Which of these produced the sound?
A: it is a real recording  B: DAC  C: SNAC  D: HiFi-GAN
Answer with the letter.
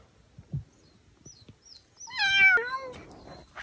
A